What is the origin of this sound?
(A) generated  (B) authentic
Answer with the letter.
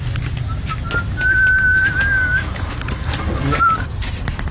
B